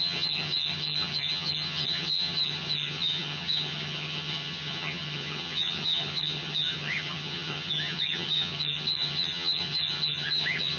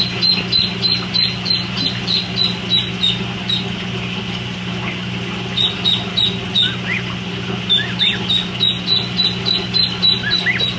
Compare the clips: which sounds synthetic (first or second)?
first